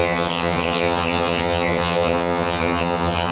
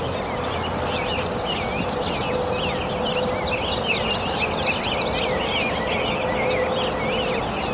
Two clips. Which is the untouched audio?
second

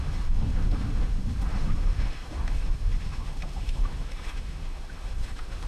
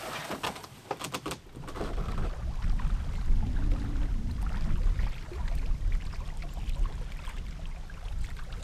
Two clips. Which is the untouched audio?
second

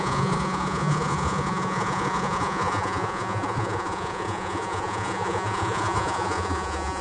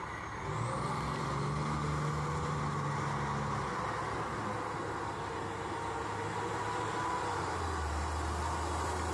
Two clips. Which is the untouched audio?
second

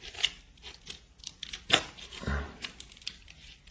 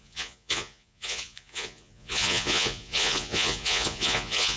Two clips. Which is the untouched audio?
first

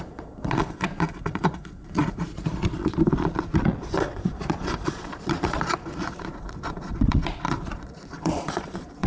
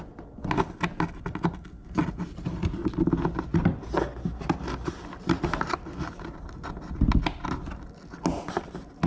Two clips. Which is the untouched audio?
second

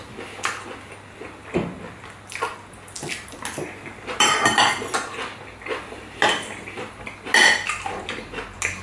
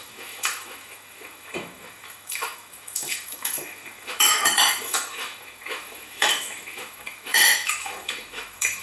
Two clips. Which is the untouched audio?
first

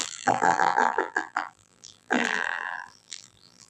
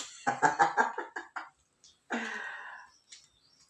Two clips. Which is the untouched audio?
second